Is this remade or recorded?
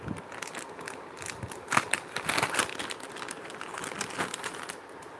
recorded